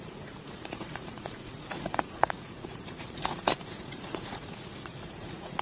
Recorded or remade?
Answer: remade